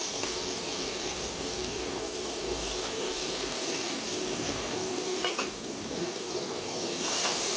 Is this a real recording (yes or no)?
no